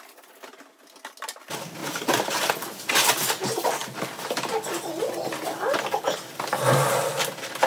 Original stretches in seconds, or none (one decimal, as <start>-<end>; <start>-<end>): 0.0-1.8; 2.5-7.7